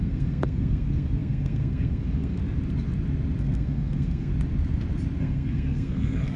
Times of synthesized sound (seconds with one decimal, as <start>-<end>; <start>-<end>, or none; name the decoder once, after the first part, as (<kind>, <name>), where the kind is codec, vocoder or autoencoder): 0.0-2.4 (codec, SNAC); 3.4-4.3; 5.2-6.4